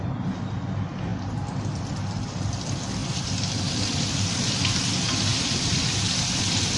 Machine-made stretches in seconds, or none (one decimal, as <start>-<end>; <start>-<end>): 1.1-2.6; 3.0-4.3